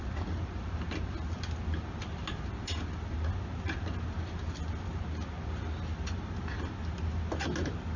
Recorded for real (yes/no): yes